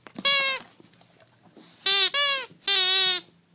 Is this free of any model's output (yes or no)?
yes